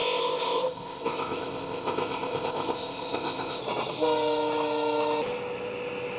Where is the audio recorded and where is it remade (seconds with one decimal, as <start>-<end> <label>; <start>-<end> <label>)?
0.0-3.6 remade; 3.6-6.2 recorded